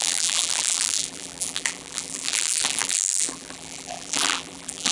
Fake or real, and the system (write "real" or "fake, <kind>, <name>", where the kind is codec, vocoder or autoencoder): fake, vocoder, BigVGAN v2